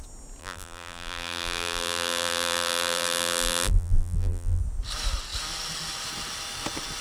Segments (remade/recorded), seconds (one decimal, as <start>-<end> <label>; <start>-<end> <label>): 0.0-0.4 recorded; 0.4-4.6 remade; 4.6-7.0 recorded

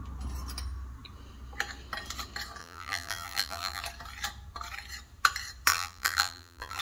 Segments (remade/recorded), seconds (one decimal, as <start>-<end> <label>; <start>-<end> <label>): 0.0-2.6 recorded; 2.6-3.8 remade; 3.8-5.7 recorded; 5.7-6.8 remade

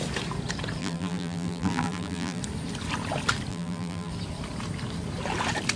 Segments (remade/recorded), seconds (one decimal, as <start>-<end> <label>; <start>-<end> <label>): 0.0-0.8 recorded; 0.8-2.4 remade; 2.4-3.5 recorded; 3.5-4.1 remade; 4.1-5.8 recorded

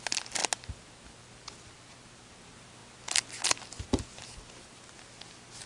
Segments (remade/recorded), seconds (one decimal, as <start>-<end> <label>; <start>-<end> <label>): 0.0-5.7 recorded

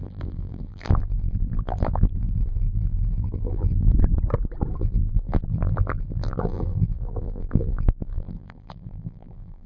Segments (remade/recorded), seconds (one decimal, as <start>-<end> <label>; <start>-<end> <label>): 0.0-3.9 remade; 3.9-4.8 recorded; 4.8-9.7 remade

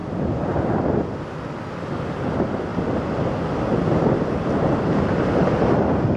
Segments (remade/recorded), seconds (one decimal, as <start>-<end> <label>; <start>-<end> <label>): 0.0-0.9 remade; 0.9-6.2 recorded